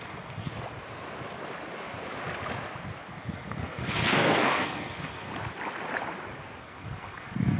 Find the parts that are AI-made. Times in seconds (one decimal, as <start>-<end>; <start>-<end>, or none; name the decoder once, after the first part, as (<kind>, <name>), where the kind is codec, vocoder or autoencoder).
0.0-0.5 (codec, SNAC); 3.1-5.3; 6.6-7.6

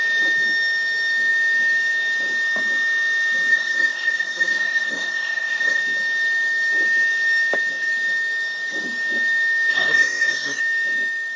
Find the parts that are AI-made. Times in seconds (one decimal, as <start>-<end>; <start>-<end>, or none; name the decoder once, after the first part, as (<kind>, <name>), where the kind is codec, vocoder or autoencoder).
3.5-5.8 (codec, SNAC); 9.7-10.6

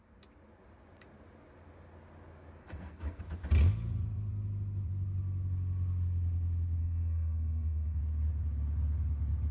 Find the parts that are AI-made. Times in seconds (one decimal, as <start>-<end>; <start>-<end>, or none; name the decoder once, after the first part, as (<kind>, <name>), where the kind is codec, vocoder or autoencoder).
2.6-3.2 (codec, SNAC); 6.8-8.0

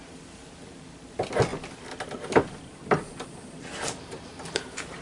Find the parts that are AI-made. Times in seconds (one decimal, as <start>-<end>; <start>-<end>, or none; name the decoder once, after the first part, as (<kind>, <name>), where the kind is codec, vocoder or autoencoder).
none

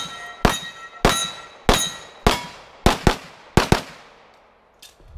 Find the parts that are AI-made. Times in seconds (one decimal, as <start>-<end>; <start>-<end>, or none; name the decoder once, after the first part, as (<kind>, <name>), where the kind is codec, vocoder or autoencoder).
none

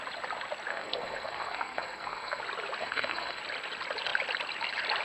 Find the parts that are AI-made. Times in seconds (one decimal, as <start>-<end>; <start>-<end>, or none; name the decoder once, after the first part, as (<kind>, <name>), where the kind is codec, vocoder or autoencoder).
0.7-2.4 (codec, SNAC); 2.8-3.4

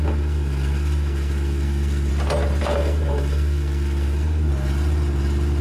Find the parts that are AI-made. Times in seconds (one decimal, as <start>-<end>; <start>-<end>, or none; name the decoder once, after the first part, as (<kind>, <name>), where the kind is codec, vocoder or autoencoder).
0.0-2.1 (codec, SNAC); 2.6-4.5

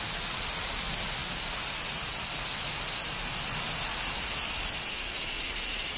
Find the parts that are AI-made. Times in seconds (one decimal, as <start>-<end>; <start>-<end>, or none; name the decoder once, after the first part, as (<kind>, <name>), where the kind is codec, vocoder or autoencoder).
none